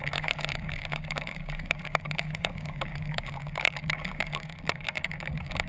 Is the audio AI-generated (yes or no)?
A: yes